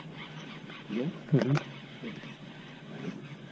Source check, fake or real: fake